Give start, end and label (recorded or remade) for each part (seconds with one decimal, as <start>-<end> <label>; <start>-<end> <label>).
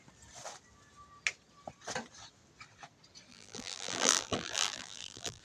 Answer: 0.0-3.3 recorded; 3.3-5.4 remade